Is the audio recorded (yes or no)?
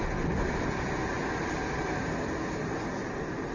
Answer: yes